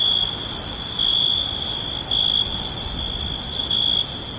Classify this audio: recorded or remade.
recorded